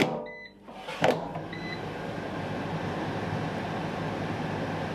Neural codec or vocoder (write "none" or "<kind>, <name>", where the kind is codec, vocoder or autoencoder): none